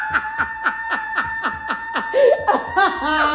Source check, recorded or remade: remade